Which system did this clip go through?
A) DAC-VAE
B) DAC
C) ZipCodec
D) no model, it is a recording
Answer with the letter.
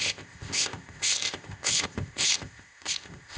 C